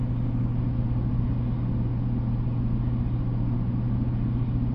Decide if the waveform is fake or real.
real